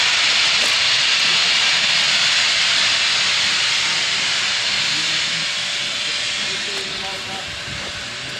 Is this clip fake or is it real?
real